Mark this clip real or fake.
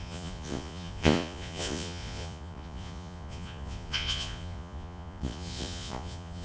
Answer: fake